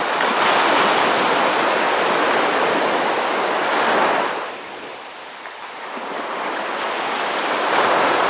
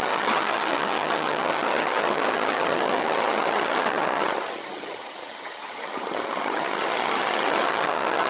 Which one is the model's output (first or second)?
second